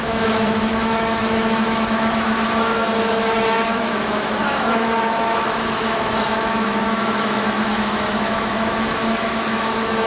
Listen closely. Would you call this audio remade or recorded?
remade